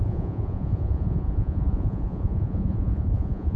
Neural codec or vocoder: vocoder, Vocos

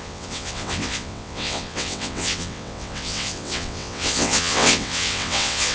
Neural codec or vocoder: vocoder, WaveNeXt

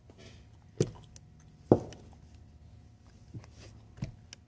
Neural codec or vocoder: none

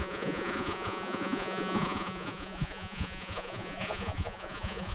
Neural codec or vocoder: vocoder, Vocos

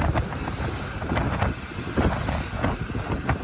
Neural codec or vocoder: none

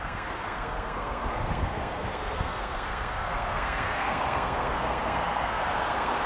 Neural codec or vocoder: codec, SNAC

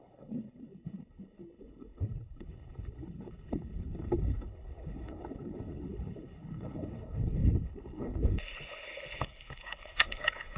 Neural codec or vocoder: codec, HILCodec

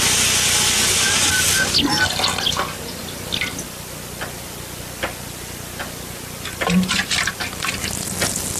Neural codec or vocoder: none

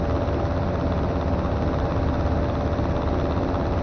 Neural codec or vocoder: none